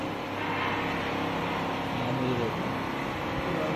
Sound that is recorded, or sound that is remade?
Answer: recorded